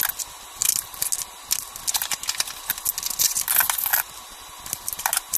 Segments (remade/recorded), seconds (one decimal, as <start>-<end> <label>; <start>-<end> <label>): 0.0-5.4 recorded